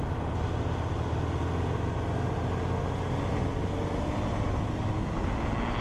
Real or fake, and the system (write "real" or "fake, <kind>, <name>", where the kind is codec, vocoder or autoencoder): real